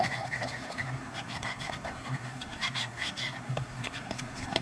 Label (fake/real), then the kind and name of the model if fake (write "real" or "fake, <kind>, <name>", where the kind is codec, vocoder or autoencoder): fake, codec, SNAC